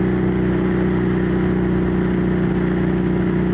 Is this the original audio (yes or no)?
yes